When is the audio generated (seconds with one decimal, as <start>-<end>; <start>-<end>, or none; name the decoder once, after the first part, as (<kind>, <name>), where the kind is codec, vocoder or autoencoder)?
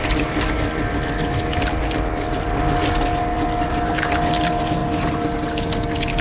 none